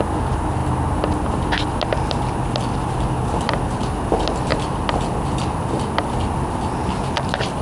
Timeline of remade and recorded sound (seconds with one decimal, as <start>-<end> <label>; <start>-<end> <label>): 0.0-7.6 recorded